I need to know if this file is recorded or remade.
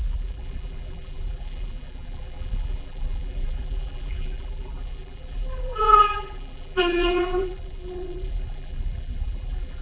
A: remade